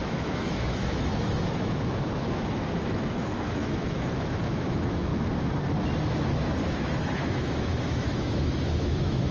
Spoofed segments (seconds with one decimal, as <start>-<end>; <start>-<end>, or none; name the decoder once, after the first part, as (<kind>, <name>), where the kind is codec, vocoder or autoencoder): 0.0-5.1 (autoencoder, DAC-VAE); 6.1-9.3